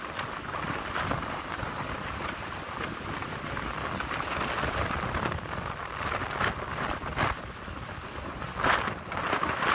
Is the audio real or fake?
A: real